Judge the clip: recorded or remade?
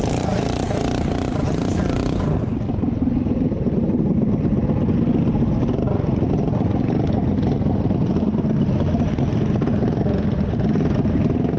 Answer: recorded